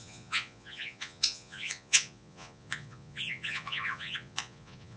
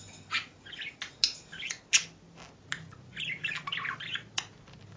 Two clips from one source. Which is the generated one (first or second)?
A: first